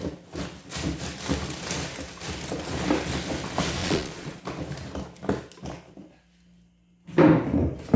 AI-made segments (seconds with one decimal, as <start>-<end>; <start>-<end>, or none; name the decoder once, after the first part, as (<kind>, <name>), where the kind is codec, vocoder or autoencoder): 3.8-4.4 (vocoder, Vocos)